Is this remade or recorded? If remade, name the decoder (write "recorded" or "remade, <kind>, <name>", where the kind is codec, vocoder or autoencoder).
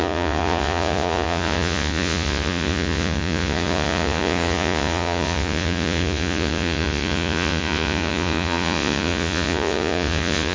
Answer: remade, vocoder, Vocos